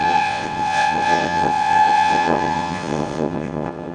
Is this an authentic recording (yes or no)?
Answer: no